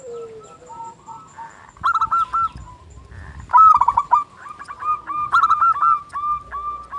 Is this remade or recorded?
recorded